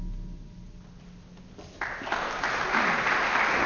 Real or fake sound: real